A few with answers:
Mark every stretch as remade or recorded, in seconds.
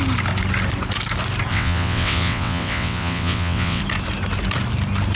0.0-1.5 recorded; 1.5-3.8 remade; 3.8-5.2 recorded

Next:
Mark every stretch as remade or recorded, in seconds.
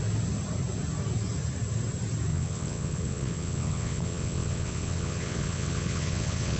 0.0-2.3 recorded; 2.3-6.6 remade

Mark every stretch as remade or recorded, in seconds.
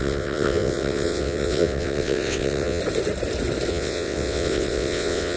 0.0-2.8 remade; 2.8-3.7 recorded; 3.7-5.4 remade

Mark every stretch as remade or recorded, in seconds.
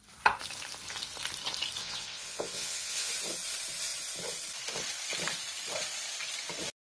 0.0-1.8 recorded; 1.8-3.1 remade; 3.1-6.8 recorded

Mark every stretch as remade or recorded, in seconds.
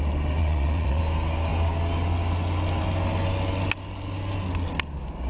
0.0-0.4 recorded; 0.4-1.0 remade; 1.0-5.3 recorded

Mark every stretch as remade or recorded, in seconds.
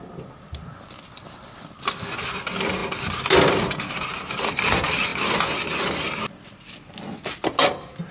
0.0-8.1 recorded